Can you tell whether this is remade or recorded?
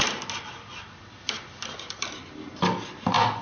recorded